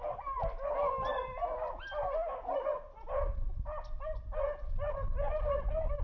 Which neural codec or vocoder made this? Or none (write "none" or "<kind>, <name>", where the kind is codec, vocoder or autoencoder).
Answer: none